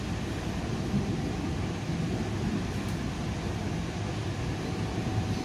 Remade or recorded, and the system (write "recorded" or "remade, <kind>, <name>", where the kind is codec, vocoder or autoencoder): recorded